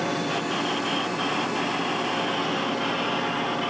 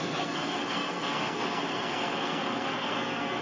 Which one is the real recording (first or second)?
first